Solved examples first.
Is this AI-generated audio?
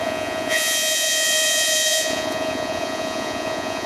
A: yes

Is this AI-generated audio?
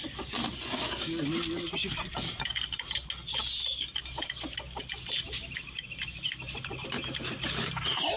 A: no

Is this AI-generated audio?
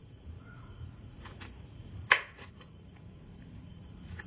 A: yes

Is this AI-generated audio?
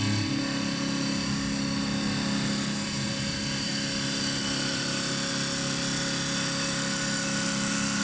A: no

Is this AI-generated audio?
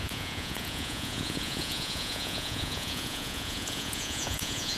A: yes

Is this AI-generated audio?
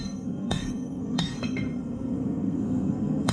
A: yes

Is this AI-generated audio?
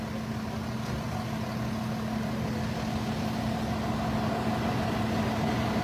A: no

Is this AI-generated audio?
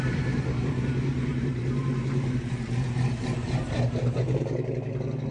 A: yes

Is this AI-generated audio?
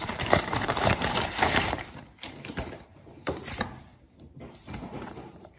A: yes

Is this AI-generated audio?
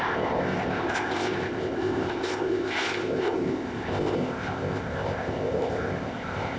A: yes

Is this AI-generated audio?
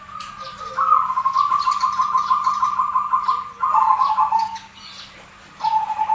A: no